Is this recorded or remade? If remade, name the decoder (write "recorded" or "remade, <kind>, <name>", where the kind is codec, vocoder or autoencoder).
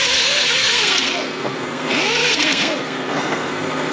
remade, codec, SNAC